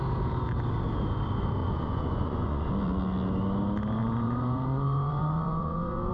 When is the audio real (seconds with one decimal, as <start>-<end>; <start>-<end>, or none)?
0.0-1.6; 2.7-4.0